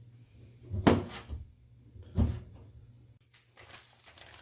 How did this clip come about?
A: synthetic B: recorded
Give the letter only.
B